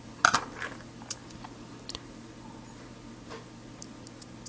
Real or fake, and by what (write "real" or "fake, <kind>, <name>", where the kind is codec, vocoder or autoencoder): real